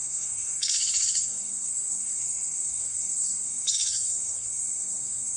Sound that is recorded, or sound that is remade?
remade